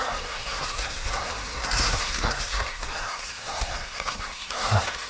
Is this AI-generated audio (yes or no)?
yes